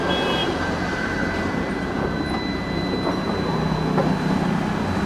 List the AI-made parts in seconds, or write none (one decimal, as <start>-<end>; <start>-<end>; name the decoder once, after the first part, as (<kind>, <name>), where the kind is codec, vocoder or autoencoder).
0.4-3.5 (vocoder, BigVGAN v2); 4.0-4.6